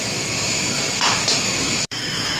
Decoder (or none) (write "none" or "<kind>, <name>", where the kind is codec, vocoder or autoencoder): autoencoder, DAC-VAE